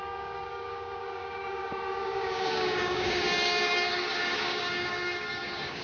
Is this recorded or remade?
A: remade